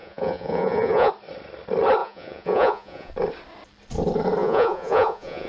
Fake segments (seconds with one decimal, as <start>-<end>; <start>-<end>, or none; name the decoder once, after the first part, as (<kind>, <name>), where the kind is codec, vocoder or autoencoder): 0.0-1.1 (vocoder, Vocos); 2.0-3.1; 4.4-5.5